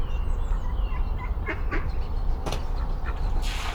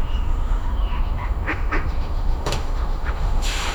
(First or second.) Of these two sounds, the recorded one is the first